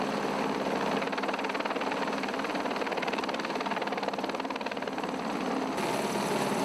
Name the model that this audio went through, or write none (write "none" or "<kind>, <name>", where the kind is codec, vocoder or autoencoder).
none